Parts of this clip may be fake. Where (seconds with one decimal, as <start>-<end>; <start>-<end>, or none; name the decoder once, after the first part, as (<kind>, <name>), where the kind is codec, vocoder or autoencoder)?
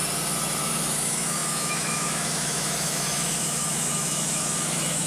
0.6-5.1 (autoencoder, DAC-VAE)